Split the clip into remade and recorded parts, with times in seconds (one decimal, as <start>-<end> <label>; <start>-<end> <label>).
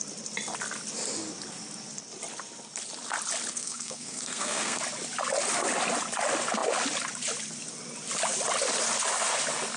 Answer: 0.0-3.5 recorded; 3.5-4.8 remade; 4.8-9.8 recorded